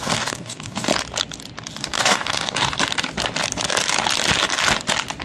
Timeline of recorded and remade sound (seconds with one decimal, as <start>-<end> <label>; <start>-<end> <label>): 0.0-0.9 remade; 0.9-1.8 recorded; 1.8-2.7 remade; 2.7-5.2 recorded